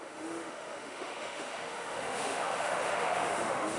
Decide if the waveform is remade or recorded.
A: remade